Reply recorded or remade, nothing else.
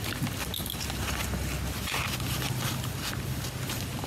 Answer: recorded